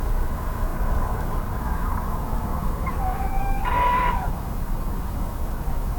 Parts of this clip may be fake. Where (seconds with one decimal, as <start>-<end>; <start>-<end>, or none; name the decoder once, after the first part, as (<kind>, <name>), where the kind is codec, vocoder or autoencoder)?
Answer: 0.0-6.0 (codec, DAC)